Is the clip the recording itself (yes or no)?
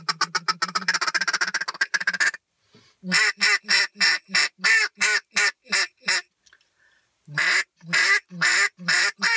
yes